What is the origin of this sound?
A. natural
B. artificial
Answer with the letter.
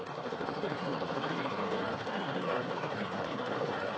B